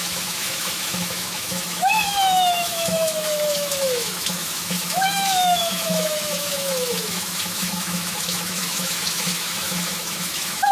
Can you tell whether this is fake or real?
fake